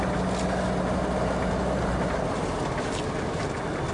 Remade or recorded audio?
recorded